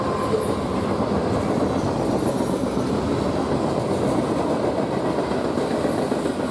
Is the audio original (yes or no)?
yes